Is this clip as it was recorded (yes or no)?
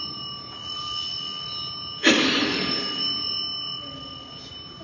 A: yes